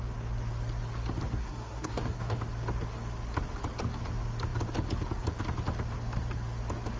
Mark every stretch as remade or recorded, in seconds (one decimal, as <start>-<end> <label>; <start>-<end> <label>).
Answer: 0.0-1.4 recorded; 1.4-2.4 remade; 2.4-7.0 recorded

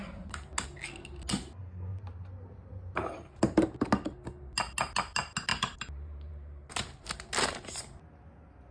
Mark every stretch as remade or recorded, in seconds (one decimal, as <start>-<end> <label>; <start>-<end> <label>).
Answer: 0.0-1.9 recorded; 1.9-3.3 remade; 3.3-5.5 recorded; 5.5-6.3 remade; 6.3-8.7 recorded

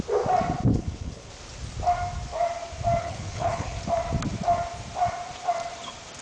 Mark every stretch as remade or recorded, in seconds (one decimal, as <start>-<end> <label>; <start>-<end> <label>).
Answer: 0.0-0.7 recorded; 0.7-1.3 remade; 1.3-3.0 recorded; 3.0-3.8 remade; 3.8-6.2 recorded

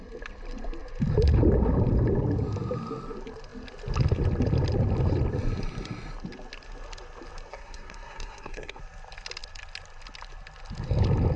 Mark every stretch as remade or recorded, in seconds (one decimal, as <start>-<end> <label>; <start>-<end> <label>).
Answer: 0.0-7.5 recorded; 7.5-8.8 remade; 8.8-11.4 recorded

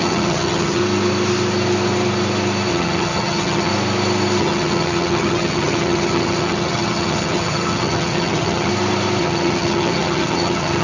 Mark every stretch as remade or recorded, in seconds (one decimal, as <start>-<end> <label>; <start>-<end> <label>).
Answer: 0.0-0.8 remade; 0.8-2.7 recorded; 2.7-3.7 remade; 3.7-4.4 recorded; 4.4-8.7 remade; 8.7-9.2 recorded; 9.2-10.8 remade